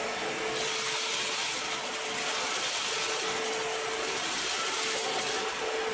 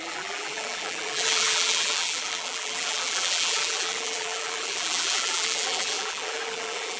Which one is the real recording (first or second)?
first